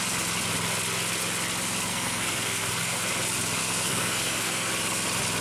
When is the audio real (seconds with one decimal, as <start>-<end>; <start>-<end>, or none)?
0.0-1.9; 3.1-3.6; 4.7-5.4